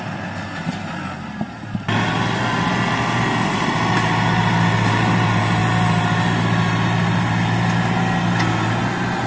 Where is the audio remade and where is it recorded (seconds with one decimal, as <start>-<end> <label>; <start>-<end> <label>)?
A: 0.0-9.3 recorded